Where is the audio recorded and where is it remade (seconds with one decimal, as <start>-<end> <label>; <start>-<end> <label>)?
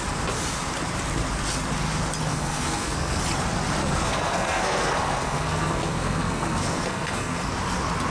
0.0-2.3 recorded; 2.3-3.2 remade; 3.2-3.8 recorded; 3.8-7.5 remade; 7.5-8.1 recorded